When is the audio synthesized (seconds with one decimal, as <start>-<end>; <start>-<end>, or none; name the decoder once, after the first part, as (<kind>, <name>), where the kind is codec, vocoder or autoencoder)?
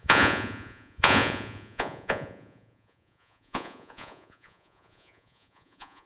0.0-6.1 (vocoder, Vocos)